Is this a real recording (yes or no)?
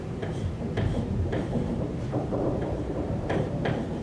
no